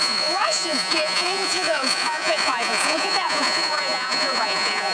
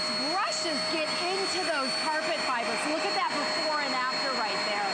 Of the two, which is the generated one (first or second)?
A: first